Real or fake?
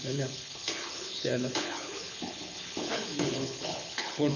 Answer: fake